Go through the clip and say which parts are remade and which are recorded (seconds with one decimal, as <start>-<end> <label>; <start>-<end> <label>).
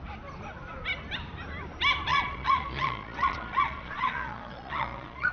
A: 0.0-2.1 recorded; 2.1-5.3 remade